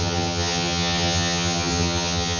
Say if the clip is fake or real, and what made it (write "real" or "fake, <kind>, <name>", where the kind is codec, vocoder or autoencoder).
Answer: fake, vocoder, HiFi-GAN